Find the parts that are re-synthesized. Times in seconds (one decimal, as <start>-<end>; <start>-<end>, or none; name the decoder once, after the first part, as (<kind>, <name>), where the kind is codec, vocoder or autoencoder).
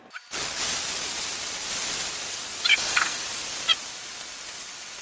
2.7-3.2 (codec, SNAC)